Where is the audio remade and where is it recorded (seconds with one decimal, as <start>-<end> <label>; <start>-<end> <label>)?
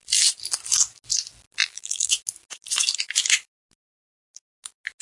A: 0.0-1.6 recorded; 1.6-2.1 remade; 2.1-5.0 recorded